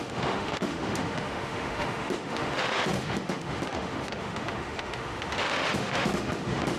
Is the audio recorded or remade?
remade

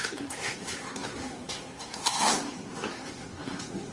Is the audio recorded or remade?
remade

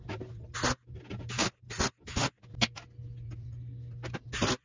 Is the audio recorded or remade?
recorded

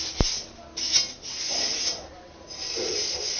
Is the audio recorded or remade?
recorded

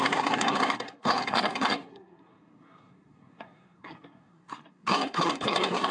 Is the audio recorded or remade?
remade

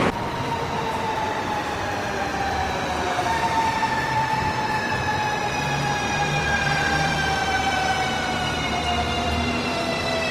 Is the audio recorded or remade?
remade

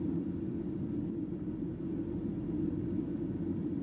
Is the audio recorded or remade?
recorded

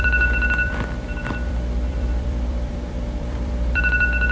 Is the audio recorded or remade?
remade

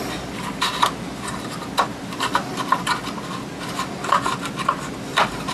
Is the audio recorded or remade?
recorded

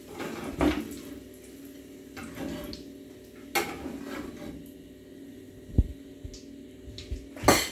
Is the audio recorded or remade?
recorded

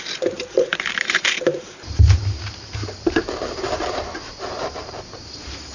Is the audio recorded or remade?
remade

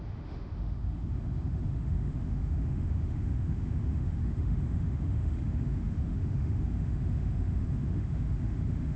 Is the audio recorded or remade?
remade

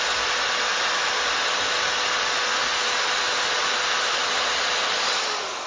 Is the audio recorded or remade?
recorded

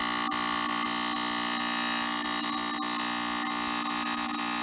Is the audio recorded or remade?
recorded